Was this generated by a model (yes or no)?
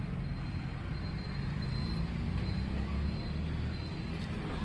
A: no